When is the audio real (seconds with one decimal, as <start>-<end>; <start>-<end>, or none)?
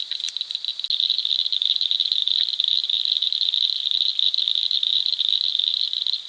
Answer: 0.7-1.3